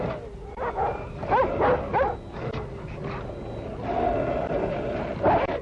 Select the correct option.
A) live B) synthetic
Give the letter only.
A